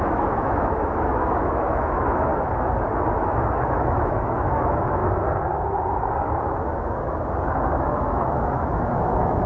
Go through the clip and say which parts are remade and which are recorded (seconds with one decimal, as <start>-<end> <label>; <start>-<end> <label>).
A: 0.0-2.3 remade; 2.3-3.2 recorded; 3.2-5.0 remade; 5.0-7.9 recorded; 7.9-9.5 remade